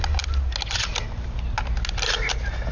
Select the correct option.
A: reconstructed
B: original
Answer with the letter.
B